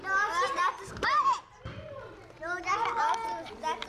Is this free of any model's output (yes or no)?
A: yes